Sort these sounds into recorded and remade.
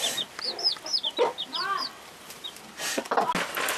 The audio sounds recorded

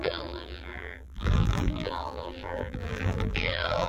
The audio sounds remade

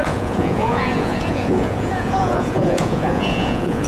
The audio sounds remade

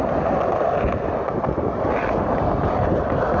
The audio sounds recorded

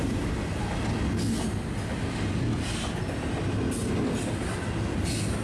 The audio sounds recorded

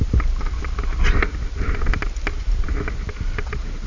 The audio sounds recorded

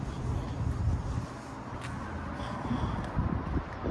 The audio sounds recorded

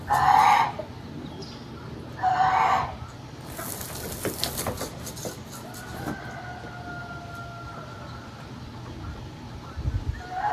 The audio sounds recorded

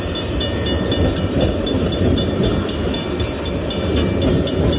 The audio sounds recorded